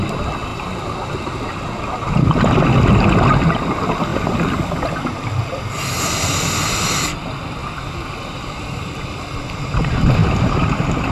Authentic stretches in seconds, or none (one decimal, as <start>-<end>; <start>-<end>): 0.0-10.2